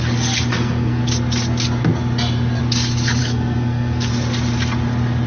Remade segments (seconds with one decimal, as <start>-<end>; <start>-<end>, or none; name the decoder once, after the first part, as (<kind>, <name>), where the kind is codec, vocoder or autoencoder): 0.5-1.0 (codec, SNAC); 3.2-4.1